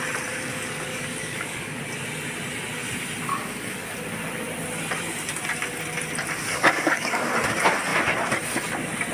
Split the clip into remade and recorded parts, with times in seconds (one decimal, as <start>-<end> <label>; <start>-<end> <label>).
0.0-0.5 recorded; 0.5-1.8 remade; 1.8-3.3 recorded; 3.3-3.9 remade; 3.9-6.5 recorded; 6.5-7.3 remade; 7.3-9.1 recorded